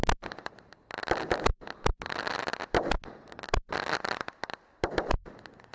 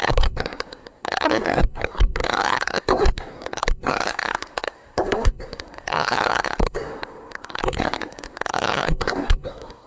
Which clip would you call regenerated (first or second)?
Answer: second